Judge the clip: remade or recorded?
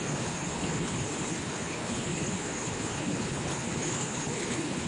remade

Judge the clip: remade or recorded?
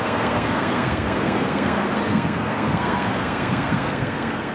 remade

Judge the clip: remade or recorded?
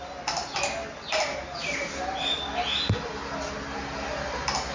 recorded